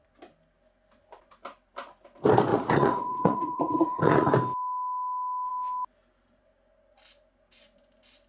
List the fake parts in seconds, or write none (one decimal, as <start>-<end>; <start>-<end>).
2.5-4.3